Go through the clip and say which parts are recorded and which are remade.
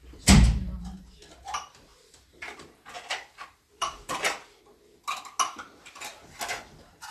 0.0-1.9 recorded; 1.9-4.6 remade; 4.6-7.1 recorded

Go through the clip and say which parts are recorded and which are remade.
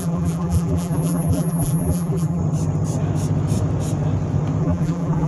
0.0-2.4 remade; 2.4-4.6 recorded; 4.6-5.3 remade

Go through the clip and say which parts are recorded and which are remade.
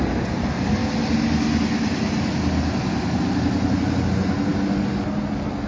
0.0-5.7 recorded